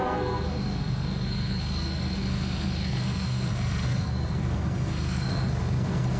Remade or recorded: remade